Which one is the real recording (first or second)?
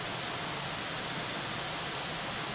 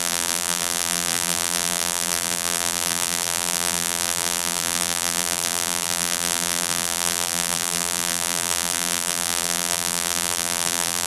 first